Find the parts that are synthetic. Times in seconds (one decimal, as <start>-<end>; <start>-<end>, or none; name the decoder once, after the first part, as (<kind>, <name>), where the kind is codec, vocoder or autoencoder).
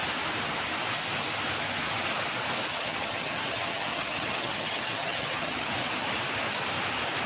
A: 2.7-5.7 (vocoder, HiFi-GAN)